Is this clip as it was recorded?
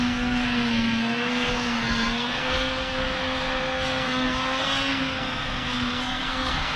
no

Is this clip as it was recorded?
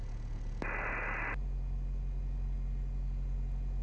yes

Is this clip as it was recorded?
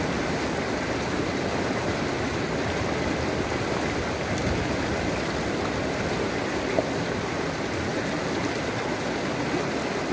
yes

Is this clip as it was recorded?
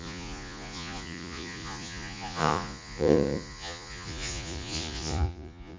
no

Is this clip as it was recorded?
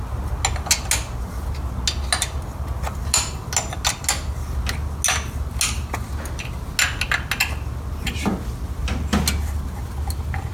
yes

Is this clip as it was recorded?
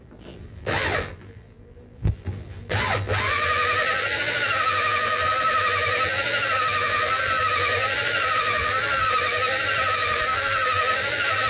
no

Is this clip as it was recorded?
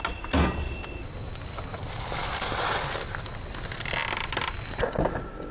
yes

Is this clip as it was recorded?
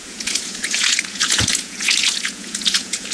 no